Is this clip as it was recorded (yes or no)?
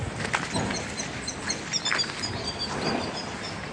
yes